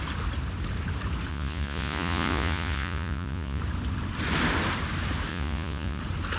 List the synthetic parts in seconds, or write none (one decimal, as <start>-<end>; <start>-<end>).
1.3-3.6; 5.3-6.0